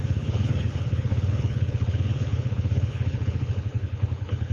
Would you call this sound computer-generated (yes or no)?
yes